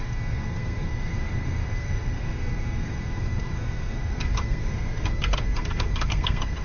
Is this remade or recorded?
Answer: remade